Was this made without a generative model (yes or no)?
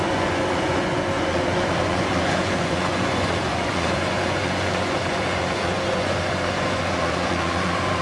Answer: no